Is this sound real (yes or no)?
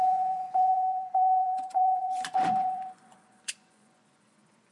no